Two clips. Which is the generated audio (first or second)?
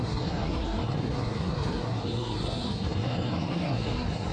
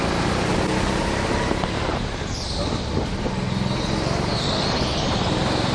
first